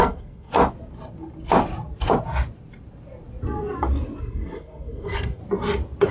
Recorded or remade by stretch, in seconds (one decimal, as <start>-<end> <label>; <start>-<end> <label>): 0.0-0.5 remade; 0.5-4.2 recorded; 4.2-5.4 remade; 5.4-6.1 recorded